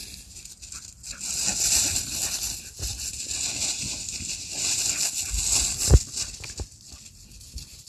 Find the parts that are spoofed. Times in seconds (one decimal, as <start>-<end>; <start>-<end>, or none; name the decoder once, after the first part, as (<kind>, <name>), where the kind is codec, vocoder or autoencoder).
none